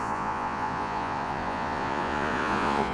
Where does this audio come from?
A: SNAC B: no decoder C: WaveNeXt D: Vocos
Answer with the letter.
D